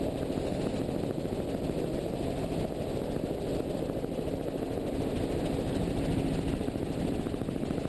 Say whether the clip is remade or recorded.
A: recorded